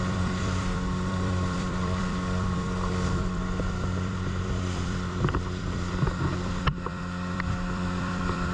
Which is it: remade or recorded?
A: remade